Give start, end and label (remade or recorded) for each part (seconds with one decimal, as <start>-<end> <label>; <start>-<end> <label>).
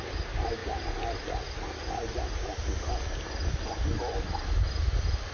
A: 0.0-5.3 recorded